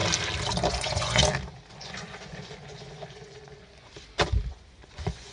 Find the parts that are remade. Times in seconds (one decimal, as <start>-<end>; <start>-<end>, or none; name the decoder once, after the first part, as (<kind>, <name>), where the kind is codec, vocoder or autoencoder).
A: 0.7-1.2 (vocoder, Vocos); 1.7-3.9; 4.5-5.3